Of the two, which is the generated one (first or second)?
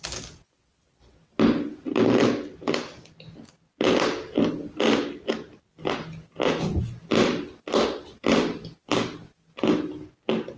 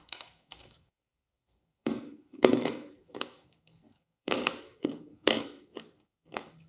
second